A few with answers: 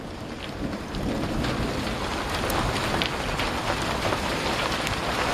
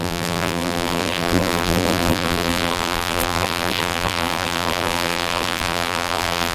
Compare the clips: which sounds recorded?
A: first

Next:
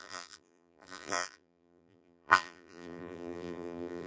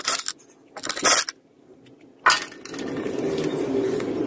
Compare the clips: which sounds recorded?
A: second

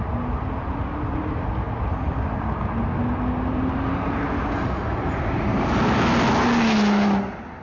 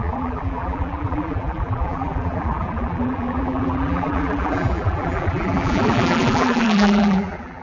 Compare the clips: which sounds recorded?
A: first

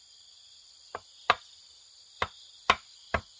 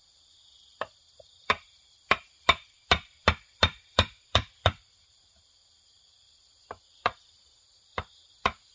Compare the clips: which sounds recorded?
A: first